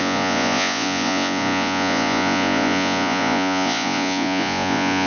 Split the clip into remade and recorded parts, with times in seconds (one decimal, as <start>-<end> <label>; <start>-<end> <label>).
0.0-5.1 remade